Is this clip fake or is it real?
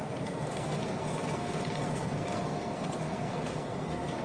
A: fake